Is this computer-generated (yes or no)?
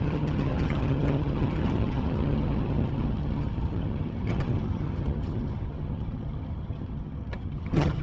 yes